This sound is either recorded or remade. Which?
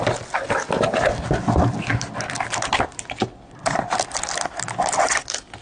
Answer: recorded